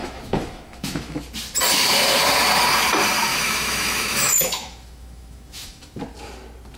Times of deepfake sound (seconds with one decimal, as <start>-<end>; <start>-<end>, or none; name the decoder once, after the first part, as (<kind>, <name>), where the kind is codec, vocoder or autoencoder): 0.0-1.2 (autoencoder, DAC-VAE); 3.3-6.0